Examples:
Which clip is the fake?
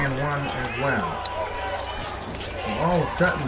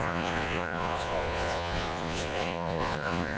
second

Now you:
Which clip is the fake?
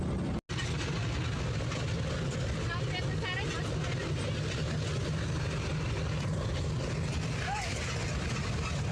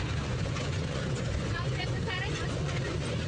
second